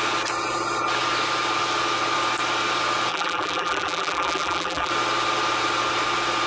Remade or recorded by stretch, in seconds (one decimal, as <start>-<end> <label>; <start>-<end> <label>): 0.0-3.1 recorded; 3.1-4.9 remade; 4.9-6.5 recorded